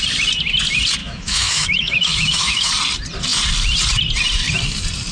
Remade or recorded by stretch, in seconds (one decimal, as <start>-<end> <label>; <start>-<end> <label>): 0.0-1.0 recorded; 1.0-2.7 remade; 2.7-5.1 recorded